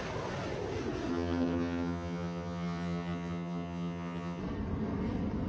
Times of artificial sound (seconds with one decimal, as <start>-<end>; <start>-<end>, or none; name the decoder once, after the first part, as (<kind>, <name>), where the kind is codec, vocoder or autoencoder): 1.1-4.4 (vocoder, HiFi-GAN)